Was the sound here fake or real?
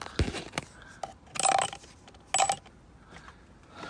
real